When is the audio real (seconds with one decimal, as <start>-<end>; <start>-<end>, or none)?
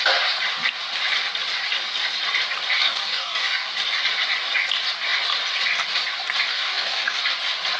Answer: 0.0-2.8; 3.7-6.5; 7.2-7.8